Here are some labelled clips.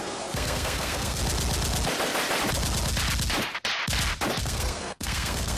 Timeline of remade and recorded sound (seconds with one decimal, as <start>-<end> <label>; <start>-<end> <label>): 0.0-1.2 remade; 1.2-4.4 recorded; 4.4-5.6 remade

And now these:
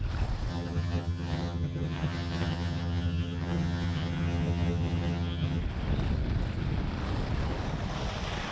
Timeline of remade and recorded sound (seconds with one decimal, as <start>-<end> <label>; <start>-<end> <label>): 0.0-0.5 recorded; 0.5-5.6 remade; 5.6-8.5 recorded

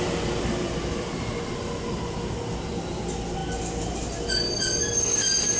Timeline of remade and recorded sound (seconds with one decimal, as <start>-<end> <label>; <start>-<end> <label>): 0.0-5.6 recorded